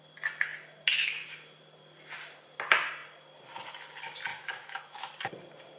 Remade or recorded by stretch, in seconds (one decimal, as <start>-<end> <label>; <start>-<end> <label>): 0.0-4.3 recorded; 4.3-5.1 remade; 5.1-5.8 recorded